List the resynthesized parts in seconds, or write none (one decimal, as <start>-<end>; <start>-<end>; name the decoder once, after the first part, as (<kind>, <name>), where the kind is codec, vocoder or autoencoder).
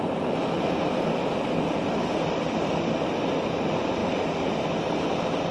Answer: none